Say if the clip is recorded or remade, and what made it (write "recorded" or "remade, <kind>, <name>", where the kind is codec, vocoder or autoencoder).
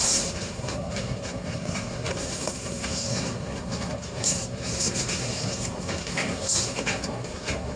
remade, codec, SNAC